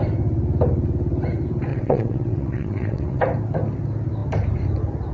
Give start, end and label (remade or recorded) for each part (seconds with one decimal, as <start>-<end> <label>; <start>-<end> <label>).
0.0-1.7 recorded; 1.7-3.2 remade; 3.2-5.1 recorded